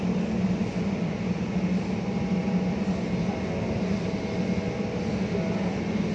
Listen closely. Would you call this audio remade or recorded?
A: recorded